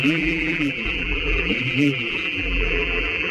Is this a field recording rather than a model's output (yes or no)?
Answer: no